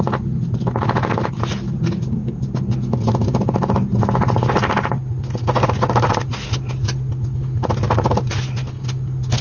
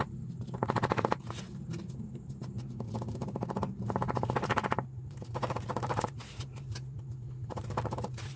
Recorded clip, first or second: first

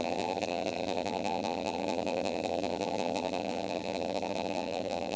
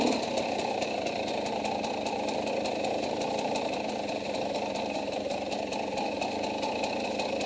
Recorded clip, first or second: second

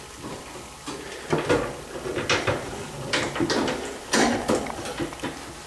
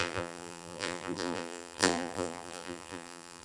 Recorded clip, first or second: first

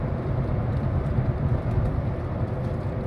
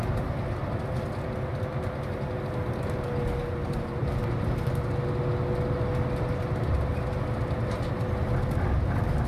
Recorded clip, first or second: second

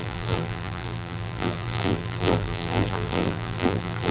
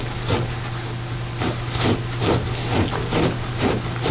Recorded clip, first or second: second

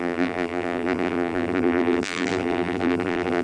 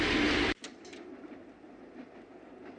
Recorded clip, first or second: second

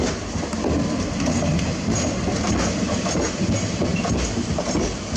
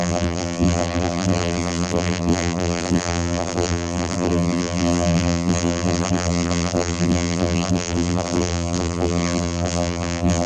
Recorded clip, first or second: first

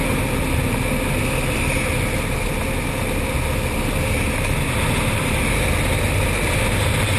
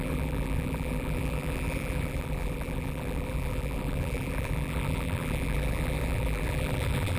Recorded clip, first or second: first